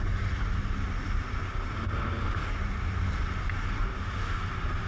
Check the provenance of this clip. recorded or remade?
recorded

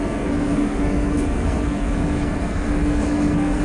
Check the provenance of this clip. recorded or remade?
remade